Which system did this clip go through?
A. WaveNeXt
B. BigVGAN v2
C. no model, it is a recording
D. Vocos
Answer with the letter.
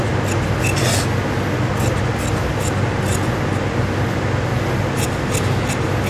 C